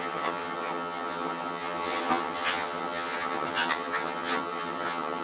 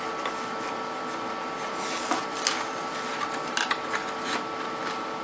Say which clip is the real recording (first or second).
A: second